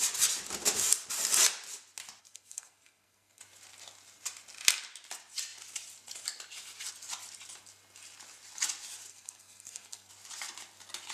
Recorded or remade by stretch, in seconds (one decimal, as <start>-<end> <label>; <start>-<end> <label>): 0.0-2.2 recorded; 2.2-3.4 remade; 3.4-9.1 recorded; 9.1-10.1 remade; 10.1-11.1 recorded